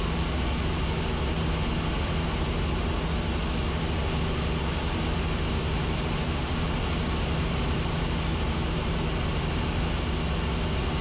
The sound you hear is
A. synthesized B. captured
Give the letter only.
B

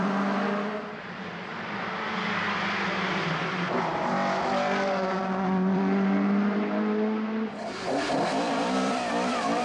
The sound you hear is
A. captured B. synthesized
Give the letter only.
B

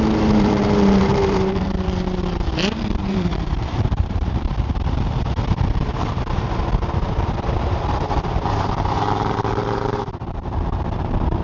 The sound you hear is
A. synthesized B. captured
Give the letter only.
A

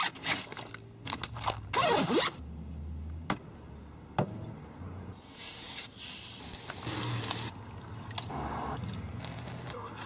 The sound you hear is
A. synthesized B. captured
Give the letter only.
B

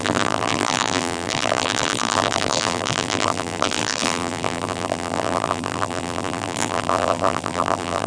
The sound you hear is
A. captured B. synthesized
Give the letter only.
B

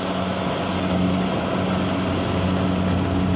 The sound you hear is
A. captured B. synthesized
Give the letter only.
A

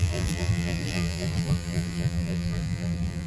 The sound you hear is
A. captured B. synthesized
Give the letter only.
B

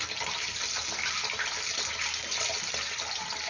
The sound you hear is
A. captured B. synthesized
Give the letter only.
A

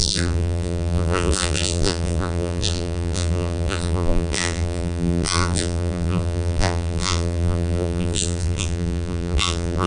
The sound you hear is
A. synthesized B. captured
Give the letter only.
A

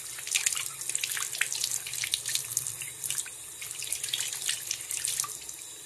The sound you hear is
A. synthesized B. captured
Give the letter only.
B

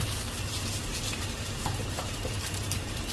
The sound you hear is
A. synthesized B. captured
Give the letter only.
A